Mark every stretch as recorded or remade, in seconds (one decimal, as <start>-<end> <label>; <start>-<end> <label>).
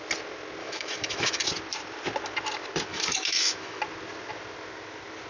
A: 0.0-0.6 recorded; 0.6-1.4 remade; 1.4-2.9 recorded; 2.9-3.8 remade; 3.8-5.3 recorded